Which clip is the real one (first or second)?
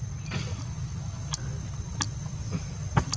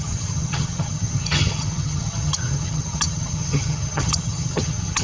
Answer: first